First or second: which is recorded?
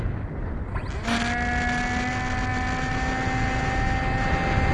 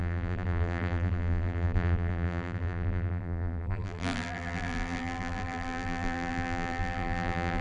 first